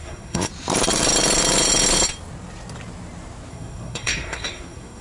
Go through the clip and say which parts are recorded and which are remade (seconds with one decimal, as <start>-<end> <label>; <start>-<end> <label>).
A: 0.0-0.5 remade; 0.5-3.5 recorded; 3.5-5.0 remade